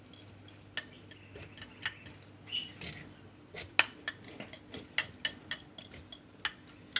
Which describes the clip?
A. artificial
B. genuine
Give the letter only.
B